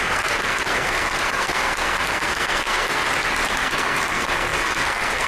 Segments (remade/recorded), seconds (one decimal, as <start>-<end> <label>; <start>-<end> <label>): 0.0-3.0 remade; 3.0-3.5 recorded; 3.5-5.3 remade

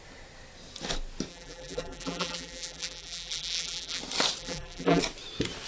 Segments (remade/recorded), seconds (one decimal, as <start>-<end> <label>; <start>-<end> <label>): 0.0-1.3 recorded; 1.3-4.0 remade; 4.0-4.4 recorded; 4.4-5.0 remade; 5.0-5.7 recorded